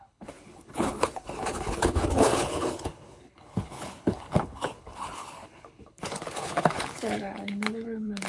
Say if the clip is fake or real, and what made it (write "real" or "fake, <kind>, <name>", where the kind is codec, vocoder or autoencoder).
fake, codec, HILCodec